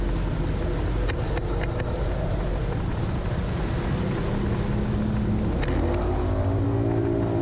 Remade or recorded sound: recorded